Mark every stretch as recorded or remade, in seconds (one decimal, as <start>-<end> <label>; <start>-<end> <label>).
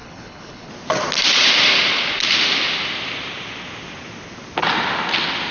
0.0-0.7 remade; 0.7-5.5 recorded